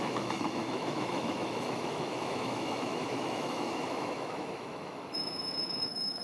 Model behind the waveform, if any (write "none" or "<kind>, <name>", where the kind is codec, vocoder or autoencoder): autoencoder, DAC-VAE